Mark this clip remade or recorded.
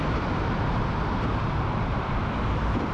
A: remade